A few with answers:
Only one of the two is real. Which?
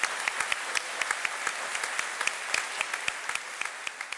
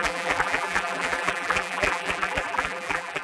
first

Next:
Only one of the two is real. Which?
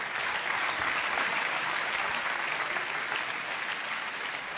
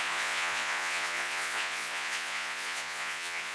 first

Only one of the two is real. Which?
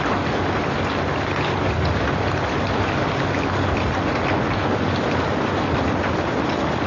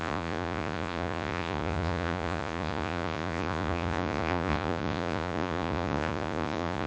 first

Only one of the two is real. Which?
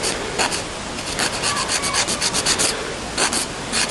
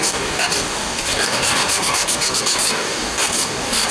first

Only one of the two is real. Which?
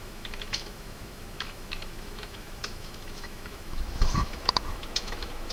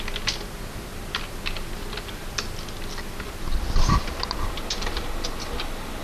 second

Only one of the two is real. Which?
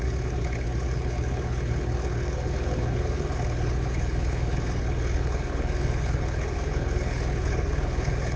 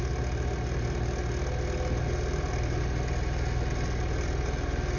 second